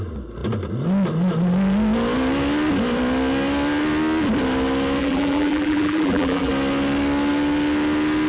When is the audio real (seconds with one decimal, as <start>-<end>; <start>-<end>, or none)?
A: 0.0-5.0; 6.5-8.3